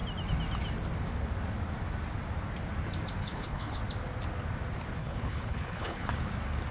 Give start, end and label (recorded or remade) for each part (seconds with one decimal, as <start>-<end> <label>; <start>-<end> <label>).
0.0-3.2 recorded; 3.2-3.8 remade; 3.8-5.0 recorded; 5.0-6.2 remade; 6.2-6.7 recorded

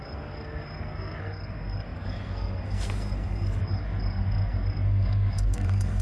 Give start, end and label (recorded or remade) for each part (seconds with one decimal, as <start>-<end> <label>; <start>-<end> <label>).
0.0-6.0 remade